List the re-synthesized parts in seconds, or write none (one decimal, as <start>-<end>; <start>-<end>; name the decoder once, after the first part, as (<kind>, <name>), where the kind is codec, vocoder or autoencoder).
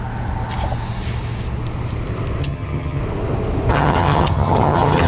2.4-3.0 (vocoder, HiFi-GAN); 3.7-5.1